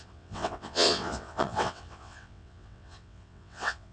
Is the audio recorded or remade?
remade